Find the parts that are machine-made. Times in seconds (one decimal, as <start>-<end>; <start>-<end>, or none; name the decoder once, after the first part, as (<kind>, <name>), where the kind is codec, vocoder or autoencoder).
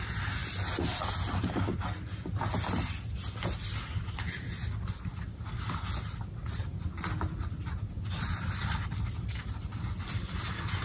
none